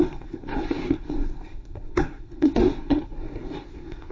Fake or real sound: fake